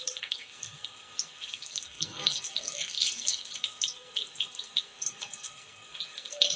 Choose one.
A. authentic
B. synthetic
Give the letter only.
B